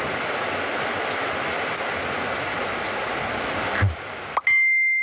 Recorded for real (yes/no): yes